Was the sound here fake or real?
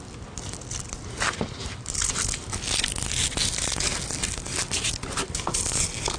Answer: real